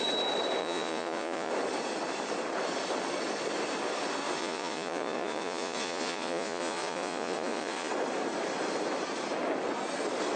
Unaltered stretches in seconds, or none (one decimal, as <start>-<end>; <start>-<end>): 0.0-0.6; 1.5-4.4; 7.9-10.4